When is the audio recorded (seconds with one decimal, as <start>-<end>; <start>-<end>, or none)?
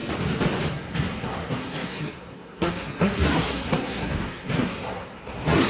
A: 0.0-0.7